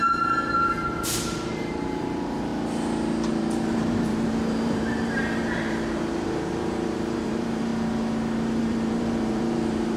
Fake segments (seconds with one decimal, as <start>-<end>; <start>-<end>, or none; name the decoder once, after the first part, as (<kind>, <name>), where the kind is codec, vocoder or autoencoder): 0.0-2.5 (vocoder, BigVGAN v2); 3.3-7.7; 8.6-10.0

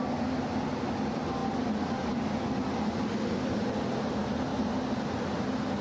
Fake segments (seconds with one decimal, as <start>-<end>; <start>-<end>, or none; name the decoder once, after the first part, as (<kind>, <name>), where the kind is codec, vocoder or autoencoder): 4.5-5.2 (vocoder, BigVGAN v2)